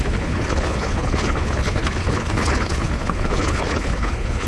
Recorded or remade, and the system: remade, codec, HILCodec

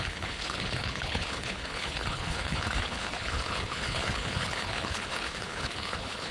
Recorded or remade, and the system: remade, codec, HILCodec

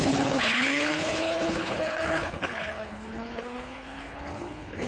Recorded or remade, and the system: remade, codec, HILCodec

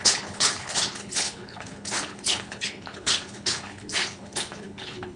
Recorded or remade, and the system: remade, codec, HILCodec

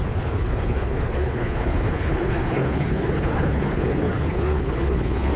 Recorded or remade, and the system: remade, codec, HILCodec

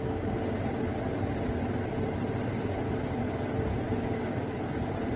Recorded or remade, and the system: recorded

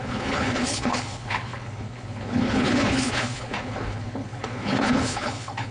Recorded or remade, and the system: remade, codec, HILCodec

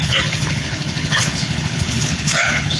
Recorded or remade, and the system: remade, codec, HILCodec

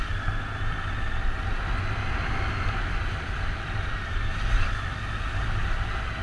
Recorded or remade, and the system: recorded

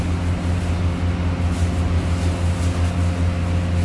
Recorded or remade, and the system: recorded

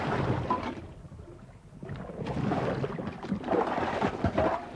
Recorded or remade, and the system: recorded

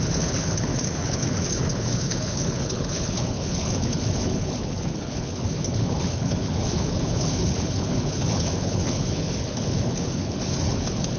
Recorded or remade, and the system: remade, codec, HILCodec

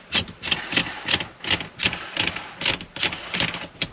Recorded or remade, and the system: recorded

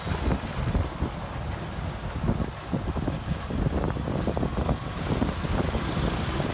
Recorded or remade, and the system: recorded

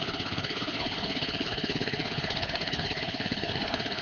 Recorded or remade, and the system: remade, codec, HILCodec